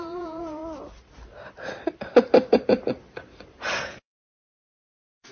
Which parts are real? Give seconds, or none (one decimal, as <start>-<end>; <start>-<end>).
0.6-3.8